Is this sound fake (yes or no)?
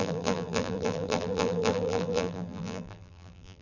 yes